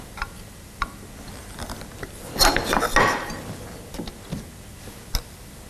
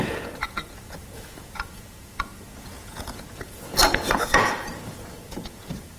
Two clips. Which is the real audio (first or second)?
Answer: first